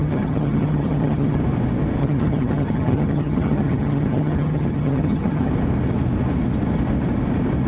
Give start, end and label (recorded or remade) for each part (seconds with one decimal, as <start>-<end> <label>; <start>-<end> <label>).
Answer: 0.0-1.4 remade; 1.4-2.0 recorded; 2.0-5.5 remade; 5.5-7.7 recorded